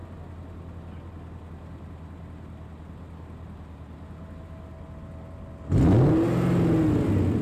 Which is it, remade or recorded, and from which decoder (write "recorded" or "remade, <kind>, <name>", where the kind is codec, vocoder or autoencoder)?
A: recorded